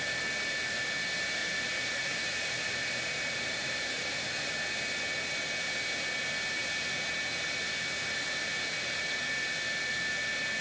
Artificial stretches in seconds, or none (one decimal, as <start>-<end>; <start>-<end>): 1.4-4.5